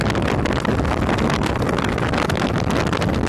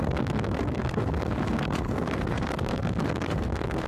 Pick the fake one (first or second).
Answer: second